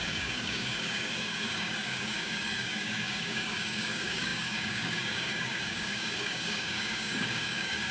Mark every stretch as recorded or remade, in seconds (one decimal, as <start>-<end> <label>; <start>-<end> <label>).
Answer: 0.0-7.9 remade